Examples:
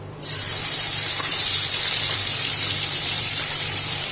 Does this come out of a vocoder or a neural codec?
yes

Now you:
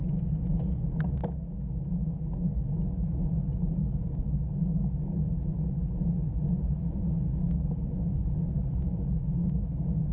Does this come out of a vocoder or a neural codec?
no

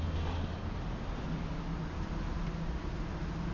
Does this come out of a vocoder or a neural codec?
no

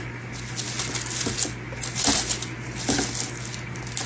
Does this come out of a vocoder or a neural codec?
no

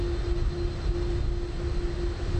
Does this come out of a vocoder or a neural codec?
no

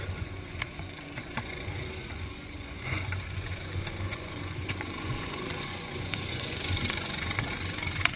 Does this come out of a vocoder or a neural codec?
yes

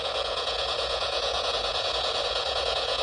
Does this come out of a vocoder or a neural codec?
yes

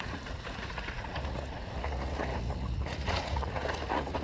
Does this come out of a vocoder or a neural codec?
yes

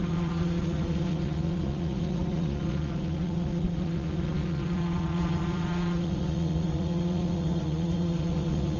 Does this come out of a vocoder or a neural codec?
yes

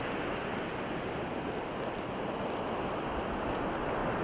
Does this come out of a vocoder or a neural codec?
no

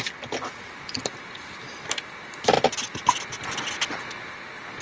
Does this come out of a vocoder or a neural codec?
no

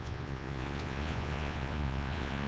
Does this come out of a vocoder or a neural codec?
yes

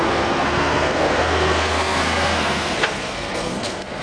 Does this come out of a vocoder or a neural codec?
yes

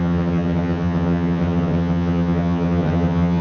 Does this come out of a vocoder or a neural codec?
yes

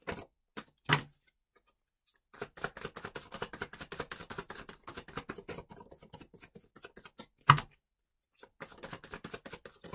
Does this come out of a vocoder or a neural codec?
no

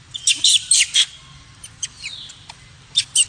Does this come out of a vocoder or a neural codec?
yes